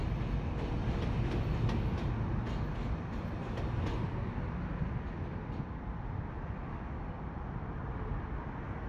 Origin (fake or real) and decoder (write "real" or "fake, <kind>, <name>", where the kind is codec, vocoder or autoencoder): real